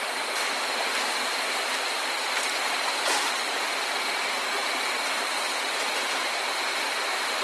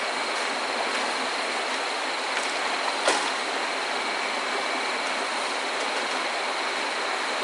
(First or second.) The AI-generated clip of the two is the first